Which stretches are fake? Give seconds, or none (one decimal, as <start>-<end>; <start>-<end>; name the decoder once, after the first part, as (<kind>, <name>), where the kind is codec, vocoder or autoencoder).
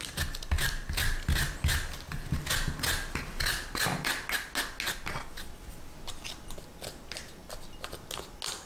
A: none